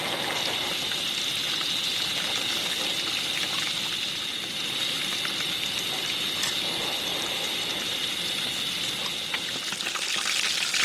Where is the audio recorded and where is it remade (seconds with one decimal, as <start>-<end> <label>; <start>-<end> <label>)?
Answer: 0.0-10.8 recorded